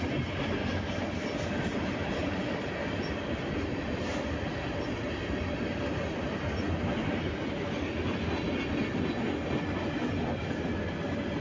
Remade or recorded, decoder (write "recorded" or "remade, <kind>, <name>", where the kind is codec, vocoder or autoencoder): recorded